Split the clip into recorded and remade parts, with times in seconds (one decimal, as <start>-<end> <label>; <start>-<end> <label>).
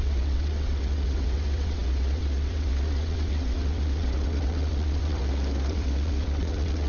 0.0-5.2 remade; 5.2-5.7 recorded; 5.7-6.9 remade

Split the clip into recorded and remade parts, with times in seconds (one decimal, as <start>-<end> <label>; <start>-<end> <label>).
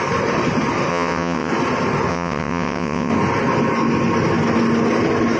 0.0-0.9 recorded; 0.9-1.5 remade; 1.5-2.1 recorded; 2.1-3.1 remade; 3.1-5.4 recorded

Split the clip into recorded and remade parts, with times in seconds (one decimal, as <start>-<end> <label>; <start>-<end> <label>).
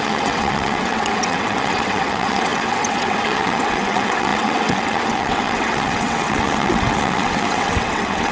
0.0-8.3 remade